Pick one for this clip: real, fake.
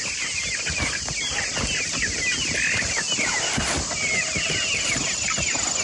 real